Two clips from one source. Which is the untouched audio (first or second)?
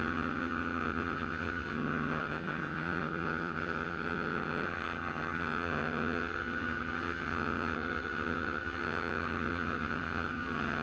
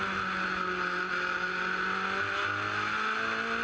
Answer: second